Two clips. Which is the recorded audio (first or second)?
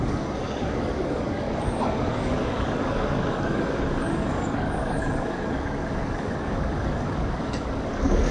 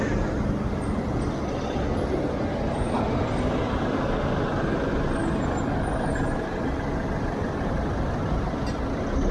second